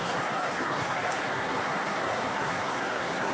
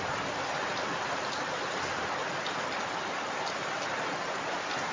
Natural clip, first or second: second